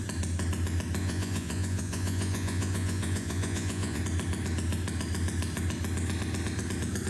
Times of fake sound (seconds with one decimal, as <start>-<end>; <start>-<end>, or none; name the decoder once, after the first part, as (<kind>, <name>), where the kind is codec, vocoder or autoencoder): 1.0-4.0 (vocoder, Vocos)